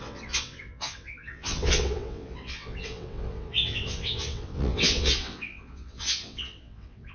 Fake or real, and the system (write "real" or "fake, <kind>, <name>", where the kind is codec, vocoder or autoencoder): fake, vocoder, WaveNeXt